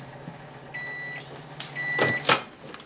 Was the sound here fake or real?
real